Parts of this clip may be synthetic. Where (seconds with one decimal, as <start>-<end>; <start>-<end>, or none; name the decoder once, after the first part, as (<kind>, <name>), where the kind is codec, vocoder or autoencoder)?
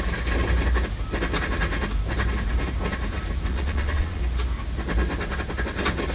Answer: 3.5-4.2 (vocoder, Vocos)